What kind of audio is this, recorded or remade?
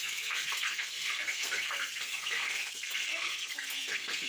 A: remade